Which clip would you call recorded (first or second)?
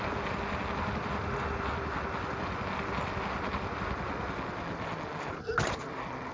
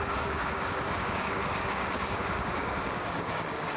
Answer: first